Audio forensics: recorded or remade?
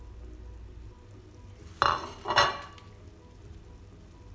recorded